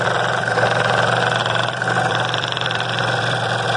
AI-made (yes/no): no